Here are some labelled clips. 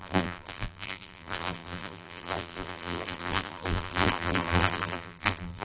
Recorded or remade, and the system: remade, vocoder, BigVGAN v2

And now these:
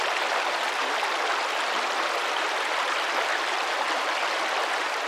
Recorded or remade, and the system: recorded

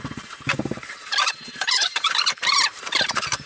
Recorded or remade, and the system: remade, vocoder, BigVGAN v2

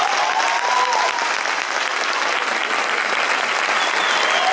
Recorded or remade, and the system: recorded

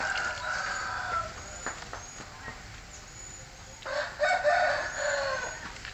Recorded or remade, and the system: recorded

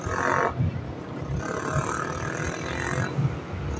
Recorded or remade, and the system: recorded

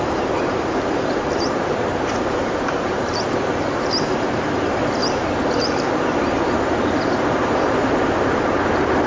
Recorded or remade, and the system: remade, vocoder, BigVGAN v2